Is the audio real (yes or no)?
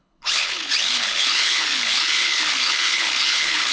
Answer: no